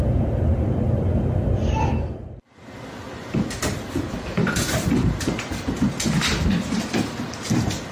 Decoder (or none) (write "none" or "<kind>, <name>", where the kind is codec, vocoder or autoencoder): vocoder, BigVGAN v2